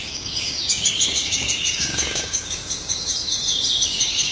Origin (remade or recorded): remade